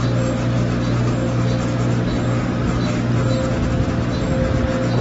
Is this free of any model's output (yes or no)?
yes